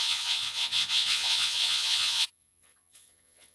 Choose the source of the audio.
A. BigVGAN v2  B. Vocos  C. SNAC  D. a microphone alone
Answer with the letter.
B